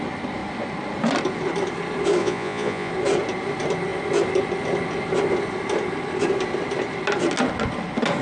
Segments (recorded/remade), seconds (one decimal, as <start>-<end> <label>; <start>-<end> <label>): 0.0-2.2 recorded; 2.2-2.9 remade; 2.9-8.2 recorded